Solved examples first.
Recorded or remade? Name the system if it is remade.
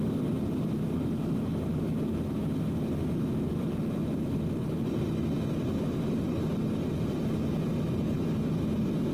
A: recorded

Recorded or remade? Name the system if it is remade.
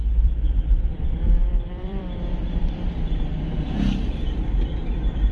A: remade, vocoder, BigVGAN v2